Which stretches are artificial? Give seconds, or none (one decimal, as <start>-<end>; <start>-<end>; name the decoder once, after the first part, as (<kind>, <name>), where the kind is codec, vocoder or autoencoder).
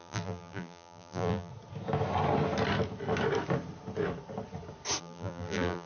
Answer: 0.0-1.5 (vocoder, BigVGAN v2); 5.0-5.9